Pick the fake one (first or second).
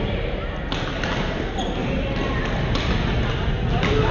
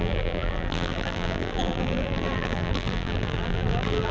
second